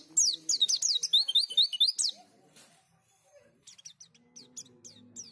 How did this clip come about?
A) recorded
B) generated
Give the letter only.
A